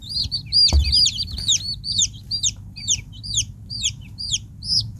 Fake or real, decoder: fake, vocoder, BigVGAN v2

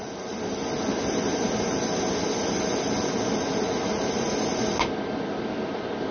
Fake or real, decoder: real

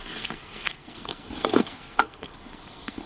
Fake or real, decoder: fake, codec, SNAC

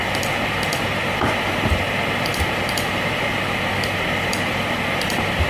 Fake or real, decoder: fake, vocoder, BigVGAN v2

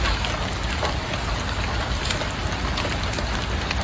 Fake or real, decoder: real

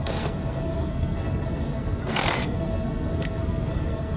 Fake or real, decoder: fake, codec, SNAC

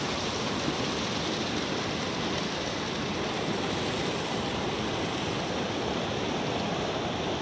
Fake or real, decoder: real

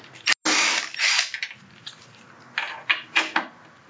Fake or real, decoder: real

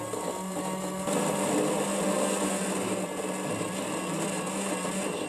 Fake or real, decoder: real